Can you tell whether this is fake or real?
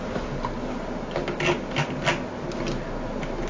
real